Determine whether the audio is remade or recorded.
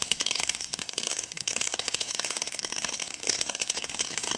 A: remade